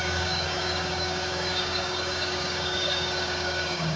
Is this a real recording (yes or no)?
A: no